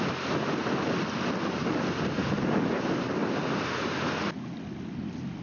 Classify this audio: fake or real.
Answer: real